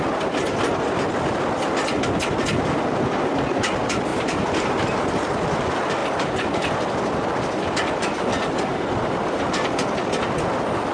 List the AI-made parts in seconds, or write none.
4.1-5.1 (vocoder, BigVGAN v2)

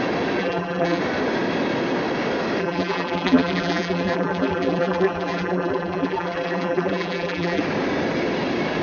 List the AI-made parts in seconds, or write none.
0.4-1.0 (vocoder, BigVGAN v2); 2.6-7.6

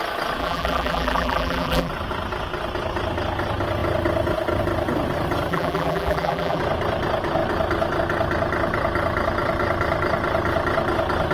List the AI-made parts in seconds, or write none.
0.4-1.9 (vocoder, BigVGAN v2); 5.5-6.6

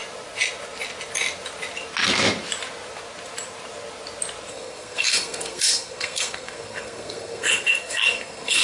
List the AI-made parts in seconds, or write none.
4.5-8.6 (codec, SNAC)

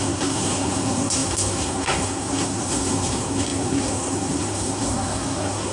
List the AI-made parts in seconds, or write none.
0.0-5.7 (codec, SNAC)

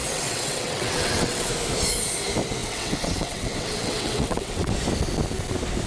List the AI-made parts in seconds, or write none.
0.0-1.5 (vocoder, WaveNeXt); 2.6-4.7

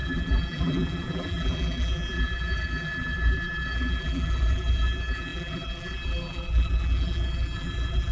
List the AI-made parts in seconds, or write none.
0.0-8.1 (vocoder, BigVGAN v2)